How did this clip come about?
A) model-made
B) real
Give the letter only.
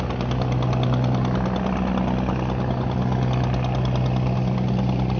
B